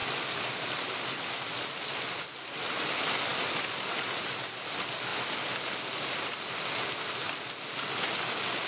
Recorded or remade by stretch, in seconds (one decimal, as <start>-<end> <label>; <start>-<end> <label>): 0.0-8.7 recorded